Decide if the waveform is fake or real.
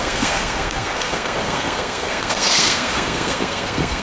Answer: fake